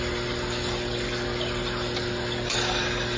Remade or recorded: recorded